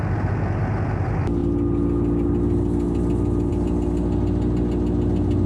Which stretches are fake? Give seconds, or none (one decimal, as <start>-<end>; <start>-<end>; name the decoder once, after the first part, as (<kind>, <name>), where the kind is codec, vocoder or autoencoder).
none